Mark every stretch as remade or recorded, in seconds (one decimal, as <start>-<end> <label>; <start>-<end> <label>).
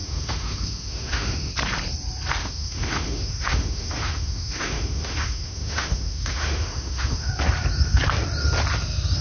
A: 0.0-1.5 remade; 1.5-2.4 recorded; 2.4-7.3 remade; 7.3-9.2 recorded